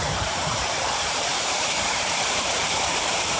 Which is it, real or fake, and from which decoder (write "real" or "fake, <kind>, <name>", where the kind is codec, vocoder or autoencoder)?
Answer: fake, vocoder, BigVGAN v2